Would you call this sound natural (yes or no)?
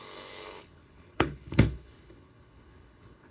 no